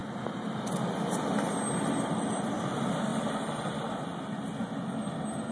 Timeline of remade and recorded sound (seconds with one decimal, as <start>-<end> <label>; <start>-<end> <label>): 0.0-5.5 recorded